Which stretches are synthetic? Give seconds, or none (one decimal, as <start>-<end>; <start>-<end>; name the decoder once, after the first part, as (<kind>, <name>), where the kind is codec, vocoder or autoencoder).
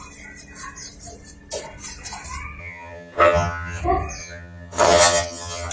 2.6-3.8 (vocoder, HiFi-GAN); 4.2-5.7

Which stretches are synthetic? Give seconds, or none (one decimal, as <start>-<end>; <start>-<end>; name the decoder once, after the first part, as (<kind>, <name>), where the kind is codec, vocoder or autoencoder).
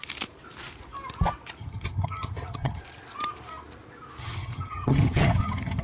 1.6-2.8 (vocoder, HiFi-GAN); 4.2-5.8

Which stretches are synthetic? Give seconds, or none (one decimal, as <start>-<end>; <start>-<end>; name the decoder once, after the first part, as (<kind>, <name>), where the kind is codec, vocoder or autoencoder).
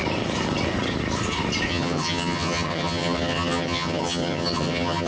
1.7-5.1 (vocoder, HiFi-GAN)